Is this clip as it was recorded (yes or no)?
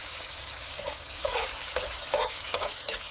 no